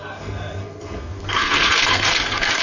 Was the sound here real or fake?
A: fake